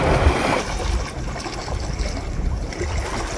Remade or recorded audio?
recorded